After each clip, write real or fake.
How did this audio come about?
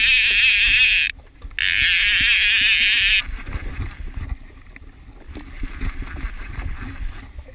real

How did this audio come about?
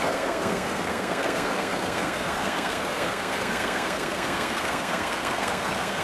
fake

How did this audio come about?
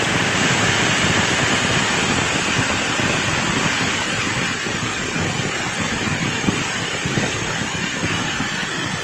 real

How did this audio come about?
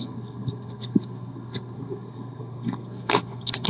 fake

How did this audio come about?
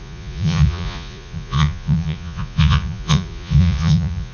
fake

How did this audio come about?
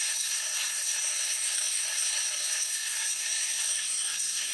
fake